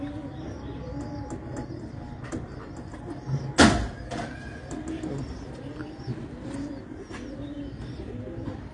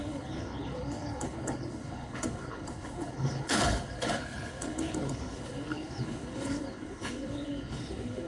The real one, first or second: first